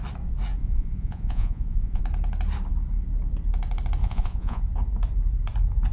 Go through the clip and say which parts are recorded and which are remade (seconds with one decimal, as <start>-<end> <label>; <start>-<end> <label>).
0.0-0.6 recorded; 0.6-2.0 remade; 2.0-4.0 recorded; 4.0-4.6 remade; 4.6-5.9 recorded